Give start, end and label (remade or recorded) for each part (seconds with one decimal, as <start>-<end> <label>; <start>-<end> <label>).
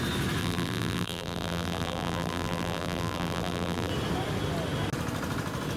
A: 0.0-0.4 recorded; 0.4-3.9 remade; 3.9-5.8 recorded